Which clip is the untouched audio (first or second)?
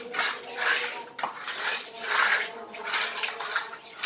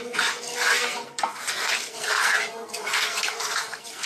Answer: first